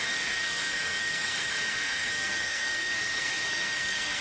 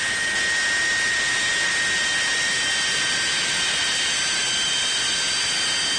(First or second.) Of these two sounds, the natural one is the second